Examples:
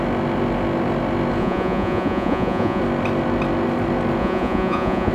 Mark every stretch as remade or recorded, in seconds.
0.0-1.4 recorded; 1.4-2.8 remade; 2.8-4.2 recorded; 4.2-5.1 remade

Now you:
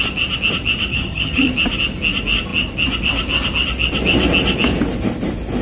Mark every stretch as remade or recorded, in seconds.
0.0-0.9 recorded; 0.9-1.5 remade; 1.5-5.6 recorded

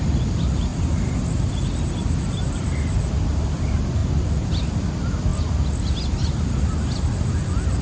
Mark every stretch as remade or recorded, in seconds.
0.0-7.8 recorded